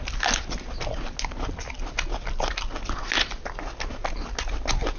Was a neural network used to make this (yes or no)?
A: no